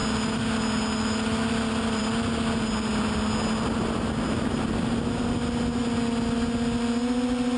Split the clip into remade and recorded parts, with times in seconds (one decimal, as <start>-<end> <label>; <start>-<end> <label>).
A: 0.0-7.6 recorded